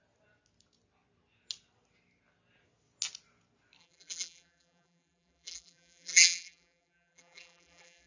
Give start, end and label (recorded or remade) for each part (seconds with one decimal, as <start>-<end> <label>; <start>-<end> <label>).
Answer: 0.0-3.8 recorded; 3.8-8.1 remade

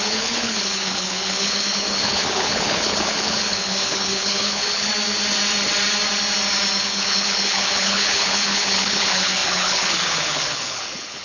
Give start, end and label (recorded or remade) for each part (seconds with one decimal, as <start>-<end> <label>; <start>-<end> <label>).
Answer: 0.0-4.9 remade; 4.9-6.8 recorded; 6.8-11.2 remade